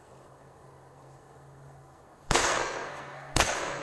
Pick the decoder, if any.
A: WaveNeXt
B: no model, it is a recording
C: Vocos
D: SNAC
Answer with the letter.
D